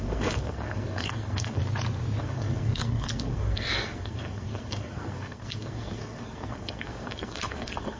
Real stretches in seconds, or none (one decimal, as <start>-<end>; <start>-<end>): 1.6-2.2